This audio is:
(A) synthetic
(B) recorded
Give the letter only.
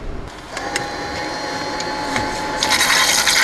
B